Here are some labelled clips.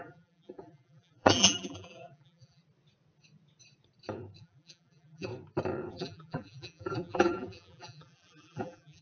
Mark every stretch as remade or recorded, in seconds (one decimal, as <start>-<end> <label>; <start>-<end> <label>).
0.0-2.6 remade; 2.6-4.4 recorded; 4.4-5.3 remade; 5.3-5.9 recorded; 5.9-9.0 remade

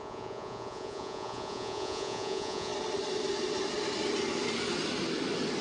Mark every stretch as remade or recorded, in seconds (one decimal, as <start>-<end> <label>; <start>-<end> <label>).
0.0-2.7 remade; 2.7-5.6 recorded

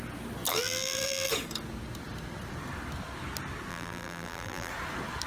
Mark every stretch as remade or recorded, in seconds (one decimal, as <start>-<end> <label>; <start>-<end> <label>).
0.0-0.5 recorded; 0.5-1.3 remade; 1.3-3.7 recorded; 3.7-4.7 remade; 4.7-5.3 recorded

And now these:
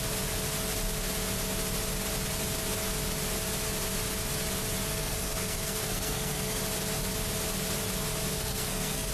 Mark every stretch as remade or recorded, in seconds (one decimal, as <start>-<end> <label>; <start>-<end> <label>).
0.0-4.9 recorded; 4.9-6.6 remade; 6.6-8.3 recorded; 8.3-9.1 remade

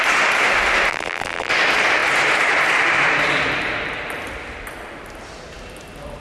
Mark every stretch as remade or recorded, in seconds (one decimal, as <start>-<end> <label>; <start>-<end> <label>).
0.0-0.9 recorded; 0.9-1.5 remade; 1.5-6.2 recorded